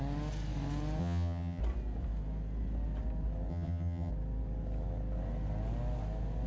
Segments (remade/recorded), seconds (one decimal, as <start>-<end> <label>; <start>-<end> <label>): 0.0-1.0 recorded; 1.0-1.6 remade; 1.6-3.5 recorded; 3.5-4.1 remade; 4.1-6.5 recorded